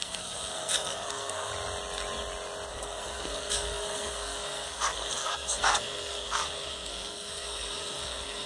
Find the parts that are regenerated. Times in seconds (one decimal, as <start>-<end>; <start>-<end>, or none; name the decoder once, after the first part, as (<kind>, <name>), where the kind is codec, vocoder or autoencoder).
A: 0.0-1.5 (codec, SNAC); 2.7-8.5

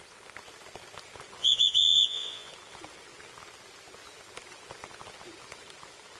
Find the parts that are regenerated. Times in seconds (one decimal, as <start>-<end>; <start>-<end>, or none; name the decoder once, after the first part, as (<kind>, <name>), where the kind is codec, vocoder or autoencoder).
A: 1.4-2.5 (vocoder, Vocos)

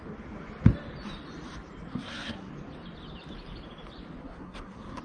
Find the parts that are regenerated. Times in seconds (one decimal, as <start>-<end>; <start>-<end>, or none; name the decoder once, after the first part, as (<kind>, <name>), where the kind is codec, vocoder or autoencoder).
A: 1.9-2.5 (codec, SNAC); 4.2-5.0